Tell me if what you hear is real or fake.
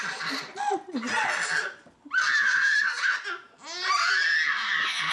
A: real